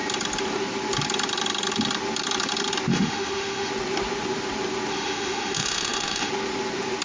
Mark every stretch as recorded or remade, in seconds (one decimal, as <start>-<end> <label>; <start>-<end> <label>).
0.0-2.9 recorded; 2.9-3.7 remade; 3.7-4.9 recorded; 4.9-6.3 remade; 6.3-7.0 recorded